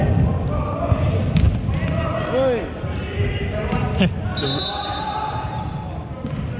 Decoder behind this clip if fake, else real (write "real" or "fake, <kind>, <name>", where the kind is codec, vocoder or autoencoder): real